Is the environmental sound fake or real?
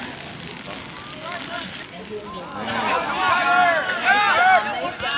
real